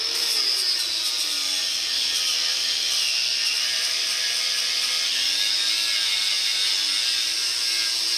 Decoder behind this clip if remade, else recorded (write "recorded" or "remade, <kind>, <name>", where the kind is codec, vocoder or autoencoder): recorded